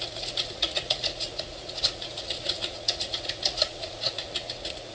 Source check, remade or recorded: remade